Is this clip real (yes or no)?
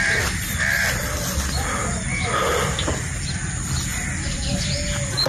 yes